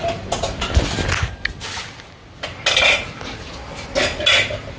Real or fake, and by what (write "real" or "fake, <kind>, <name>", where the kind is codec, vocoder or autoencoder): real